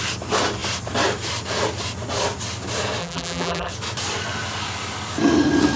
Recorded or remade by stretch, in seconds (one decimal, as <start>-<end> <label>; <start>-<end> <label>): 0.0-3.0 recorded; 3.0-3.7 remade; 3.7-5.8 recorded